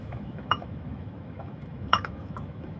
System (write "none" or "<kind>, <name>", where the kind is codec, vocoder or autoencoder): autoencoder, DAC-VAE